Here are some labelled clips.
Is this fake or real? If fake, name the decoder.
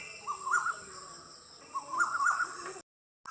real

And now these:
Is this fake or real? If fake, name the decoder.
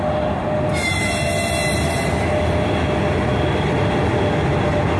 real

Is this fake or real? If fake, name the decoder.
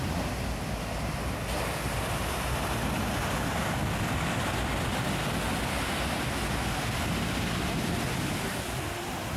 real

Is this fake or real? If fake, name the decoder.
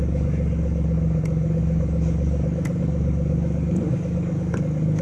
fake, codec, DAC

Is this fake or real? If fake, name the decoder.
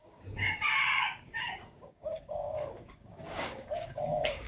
fake, codec, DAC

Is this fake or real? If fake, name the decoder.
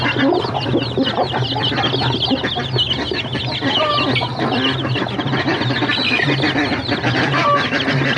real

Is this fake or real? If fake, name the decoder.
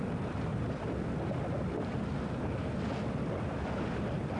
real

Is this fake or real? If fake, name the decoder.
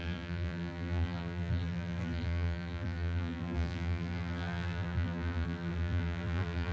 fake, vocoder, BigVGAN v2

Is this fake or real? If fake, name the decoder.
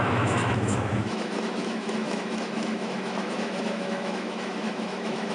fake, autoencoder, DAC-VAE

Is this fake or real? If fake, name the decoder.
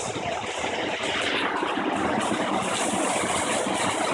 fake, vocoder, BigVGAN v2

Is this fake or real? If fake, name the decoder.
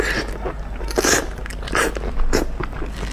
real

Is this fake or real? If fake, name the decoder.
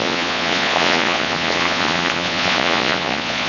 fake, vocoder, Vocos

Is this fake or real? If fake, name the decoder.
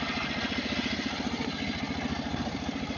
real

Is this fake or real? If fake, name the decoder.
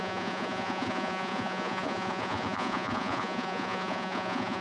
fake, vocoder, Vocos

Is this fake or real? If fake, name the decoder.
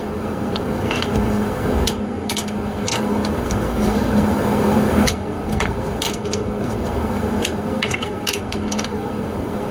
fake, codec, SNAC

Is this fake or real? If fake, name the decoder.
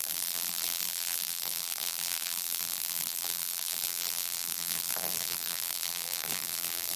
fake, vocoder, BigVGAN v2